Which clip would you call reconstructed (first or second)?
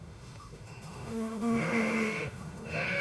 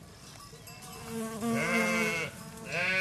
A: first